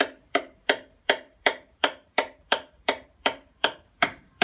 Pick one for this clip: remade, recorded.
remade